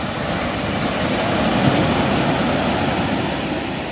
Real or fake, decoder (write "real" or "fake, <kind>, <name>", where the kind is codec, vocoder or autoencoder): real